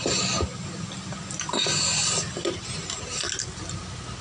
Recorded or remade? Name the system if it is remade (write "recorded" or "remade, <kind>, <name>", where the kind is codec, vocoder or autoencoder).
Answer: recorded